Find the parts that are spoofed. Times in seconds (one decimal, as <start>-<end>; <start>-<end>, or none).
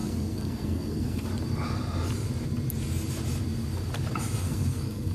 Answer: 0.0-1.3; 4.4-5.1